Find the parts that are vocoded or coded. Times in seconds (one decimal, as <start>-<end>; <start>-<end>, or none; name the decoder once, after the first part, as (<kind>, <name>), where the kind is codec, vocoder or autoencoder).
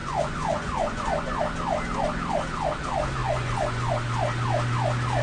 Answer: 0.0-1.4 (vocoder, Vocos); 3.2-3.9